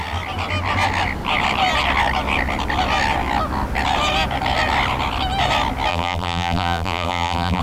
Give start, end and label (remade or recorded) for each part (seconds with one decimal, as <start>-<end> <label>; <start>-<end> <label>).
0.0-5.9 recorded; 5.9-7.6 remade